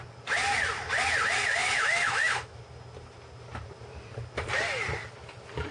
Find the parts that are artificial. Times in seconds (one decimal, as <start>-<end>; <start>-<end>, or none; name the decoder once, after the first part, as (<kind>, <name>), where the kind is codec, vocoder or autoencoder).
1.6-2.6 (autoencoder, DAC-VAE)